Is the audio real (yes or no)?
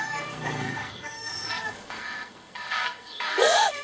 no